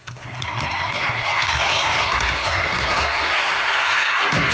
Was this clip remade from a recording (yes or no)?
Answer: yes